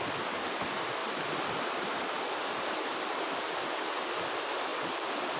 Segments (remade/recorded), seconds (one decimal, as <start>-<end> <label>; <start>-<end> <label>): 0.0-5.4 recorded